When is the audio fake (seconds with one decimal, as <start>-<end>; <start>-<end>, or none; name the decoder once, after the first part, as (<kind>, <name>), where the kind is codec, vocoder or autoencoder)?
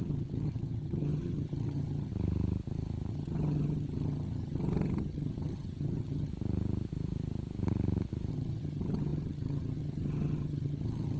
0.0-2.1 (vocoder, HiFi-GAN); 3.1-6.3; 8.3-11.2